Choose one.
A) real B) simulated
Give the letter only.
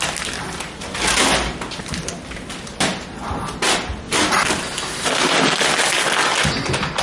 A